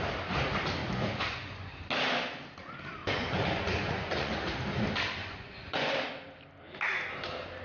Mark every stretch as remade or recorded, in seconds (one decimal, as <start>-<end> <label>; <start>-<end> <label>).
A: 0.0-0.8 recorded; 0.8-1.7 remade; 1.7-3.0 recorded; 3.0-4.3 remade; 4.3-5.2 recorded; 5.2-5.9 remade; 5.9-7.6 recorded

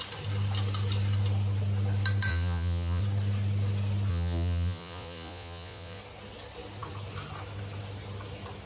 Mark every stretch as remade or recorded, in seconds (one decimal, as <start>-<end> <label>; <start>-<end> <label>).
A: 0.0-2.3 recorded; 2.3-3.0 remade; 3.0-4.1 recorded; 4.1-6.0 remade; 6.0-8.7 recorded

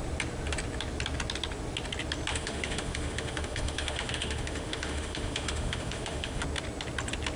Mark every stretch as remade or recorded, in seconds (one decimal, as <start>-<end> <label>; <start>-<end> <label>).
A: 0.0-2.3 recorded; 2.3-6.4 remade; 6.4-7.4 recorded